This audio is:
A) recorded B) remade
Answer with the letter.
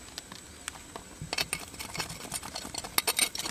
A